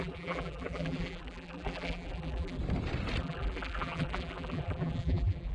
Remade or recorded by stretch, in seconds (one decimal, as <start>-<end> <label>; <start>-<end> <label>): 0.0-2.6 remade; 2.6-3.2 recorded; 3.2-5.5 remade